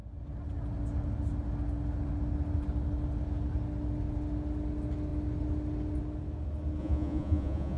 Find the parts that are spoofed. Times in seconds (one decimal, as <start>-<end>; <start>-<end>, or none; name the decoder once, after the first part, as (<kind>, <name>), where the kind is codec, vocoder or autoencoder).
6.8-7.8 (vocoder, Vocos)